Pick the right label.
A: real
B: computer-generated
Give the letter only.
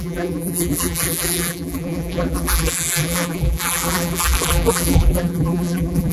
B